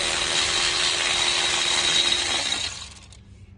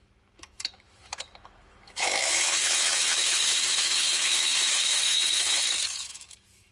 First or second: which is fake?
second